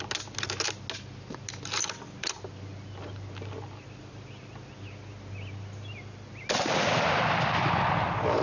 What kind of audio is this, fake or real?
real